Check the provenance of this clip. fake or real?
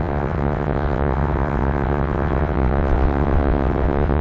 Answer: fake